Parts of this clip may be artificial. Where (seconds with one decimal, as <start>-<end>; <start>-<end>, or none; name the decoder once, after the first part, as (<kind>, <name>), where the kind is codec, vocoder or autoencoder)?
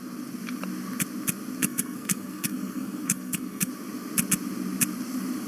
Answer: 1.6-3.7 (codec, SNAC)